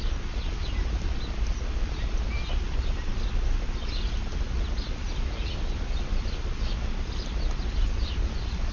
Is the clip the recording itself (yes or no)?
yes